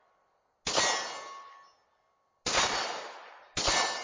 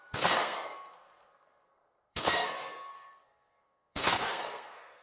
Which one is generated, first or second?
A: second